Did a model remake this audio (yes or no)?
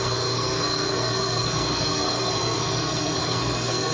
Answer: yes